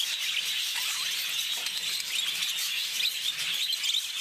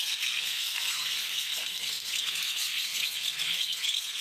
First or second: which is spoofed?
second